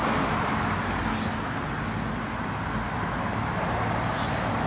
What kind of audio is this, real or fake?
real